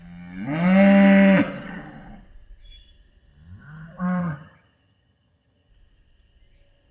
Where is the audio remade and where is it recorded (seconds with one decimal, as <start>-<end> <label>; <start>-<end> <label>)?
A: 0.0-4.2 recorded; 4.2-5.7 remade; 5.7-6.9 recorded